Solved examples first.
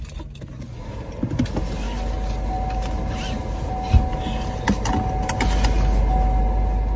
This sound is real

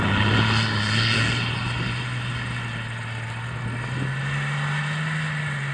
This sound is real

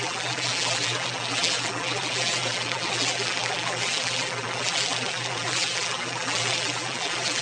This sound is fake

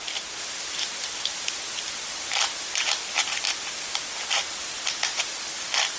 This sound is fake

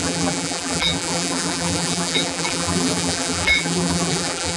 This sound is fake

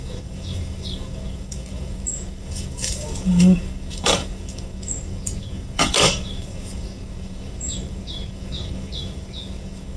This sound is fake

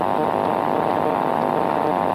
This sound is real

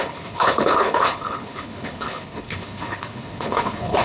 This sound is fake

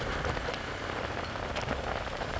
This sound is real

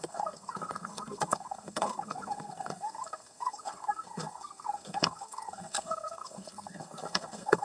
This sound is fake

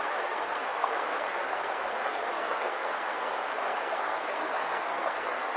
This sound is fake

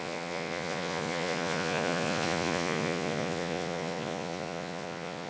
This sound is fake